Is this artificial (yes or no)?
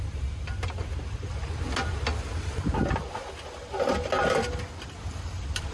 no